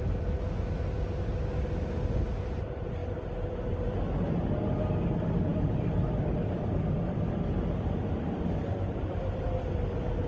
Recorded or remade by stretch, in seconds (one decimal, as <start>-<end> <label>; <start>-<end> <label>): 0.0-10.3 recorded

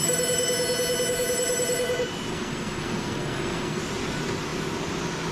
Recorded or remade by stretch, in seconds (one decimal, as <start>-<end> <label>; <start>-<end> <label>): 0.0-2.3 recorded; 2.3-3.8 remade; 3.8-5.3 recorded

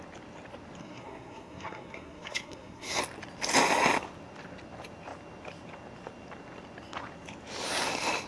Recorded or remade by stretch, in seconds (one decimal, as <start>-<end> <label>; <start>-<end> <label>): 0.0-0.8 recorded; 0.8-3.0 remade; 3.0-8.3 recorded